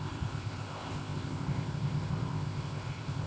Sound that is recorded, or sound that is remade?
remade